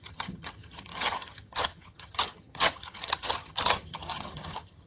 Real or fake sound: fake